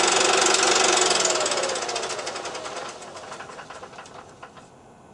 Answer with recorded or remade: recorded